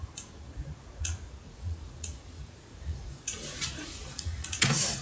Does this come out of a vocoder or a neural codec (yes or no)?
yes